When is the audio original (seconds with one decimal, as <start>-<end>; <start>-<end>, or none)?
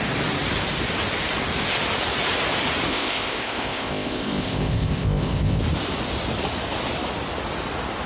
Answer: 0.0-2.9; 5.6-8.1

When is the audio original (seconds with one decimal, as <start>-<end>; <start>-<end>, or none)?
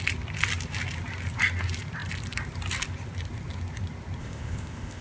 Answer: 0.0-4.2